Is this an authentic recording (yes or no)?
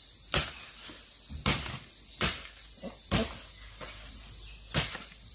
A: yes